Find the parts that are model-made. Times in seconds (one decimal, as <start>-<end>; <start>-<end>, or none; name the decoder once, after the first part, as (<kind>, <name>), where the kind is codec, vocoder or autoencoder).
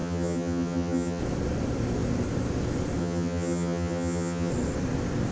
0.0-1.2 (vocoder, HiFi-GAN); 3.0-4.5